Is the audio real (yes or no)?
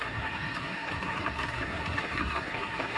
no